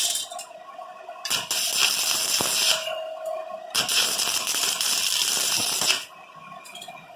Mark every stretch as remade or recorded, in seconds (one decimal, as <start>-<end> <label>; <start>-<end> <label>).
0.0-3.4 recorded; 3.4-5.3 remade; 5.3-7.2 recorded

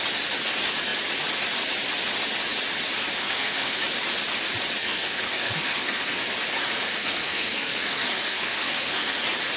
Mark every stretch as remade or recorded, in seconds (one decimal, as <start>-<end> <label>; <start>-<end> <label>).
0.0-3.2 recorded; 3.2-3.8 remade; 3.8-4.8 recorded; 4.8-6.2 remade; 6.2-7.0 recorded; 7.0-9.2 remade; 9.2-9.6 recorded

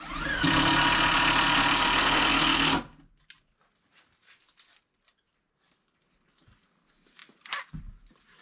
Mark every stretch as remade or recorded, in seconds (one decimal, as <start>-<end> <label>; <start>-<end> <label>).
0.0-8.4 recorded

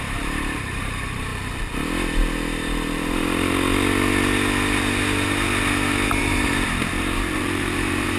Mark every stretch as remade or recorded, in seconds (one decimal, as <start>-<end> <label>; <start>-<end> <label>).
0.0-1.3 remade; 1.3-6.2 recorded; 6.2-8.2 remade

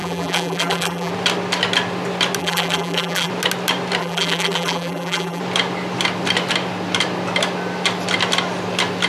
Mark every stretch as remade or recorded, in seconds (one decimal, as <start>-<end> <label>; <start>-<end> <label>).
0.0-1.1 remade; 1.1-2.4 recorded; 2.4-3.3 remade; 3.3-4.0 recorded; 4.0-5.4 remade; 5.4-9.1 recorded